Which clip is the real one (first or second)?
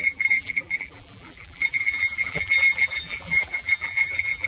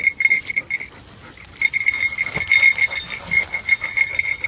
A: second